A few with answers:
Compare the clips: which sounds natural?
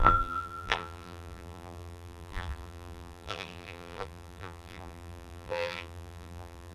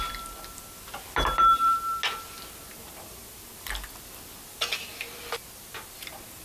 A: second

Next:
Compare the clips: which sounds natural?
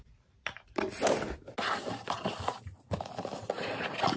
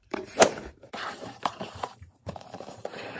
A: first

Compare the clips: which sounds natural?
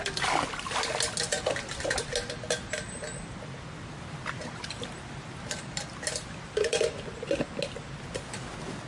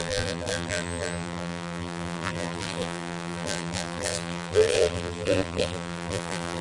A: first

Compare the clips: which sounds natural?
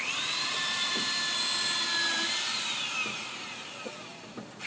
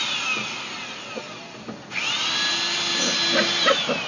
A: second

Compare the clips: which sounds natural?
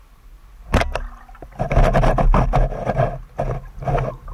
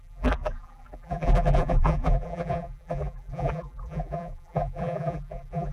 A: first